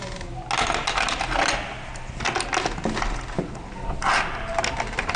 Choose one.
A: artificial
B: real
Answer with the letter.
B